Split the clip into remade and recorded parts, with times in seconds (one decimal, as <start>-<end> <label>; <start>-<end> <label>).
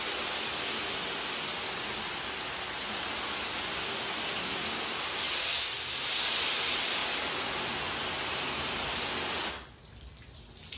0.0-10.8 recorded